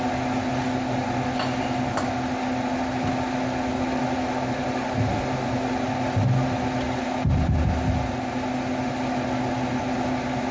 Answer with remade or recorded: recorded